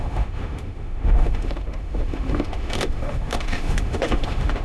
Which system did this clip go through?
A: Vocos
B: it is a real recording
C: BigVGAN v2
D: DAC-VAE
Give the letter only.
D